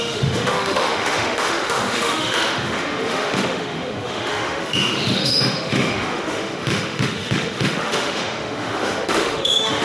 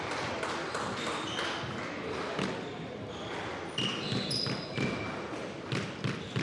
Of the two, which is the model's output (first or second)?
first